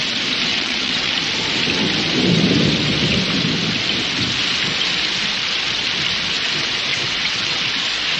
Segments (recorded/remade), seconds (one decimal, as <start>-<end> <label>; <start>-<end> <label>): 0.0-0.5 recorded; 0.5-1.1 remade; 1.1-6.9 recorded; 6.9-7.6 remade; 7.6-8.2 recorded